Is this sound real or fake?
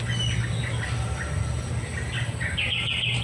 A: real